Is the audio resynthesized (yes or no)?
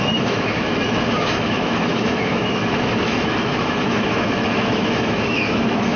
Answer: yes